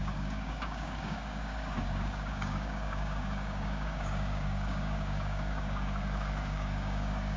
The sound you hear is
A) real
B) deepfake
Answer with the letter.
B